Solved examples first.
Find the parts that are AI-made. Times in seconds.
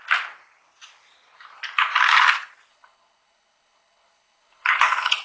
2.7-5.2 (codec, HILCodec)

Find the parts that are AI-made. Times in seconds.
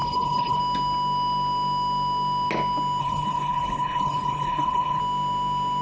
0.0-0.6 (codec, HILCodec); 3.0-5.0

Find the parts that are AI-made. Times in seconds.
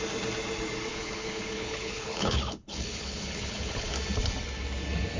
0.9-3.9 (codec, HILCodec)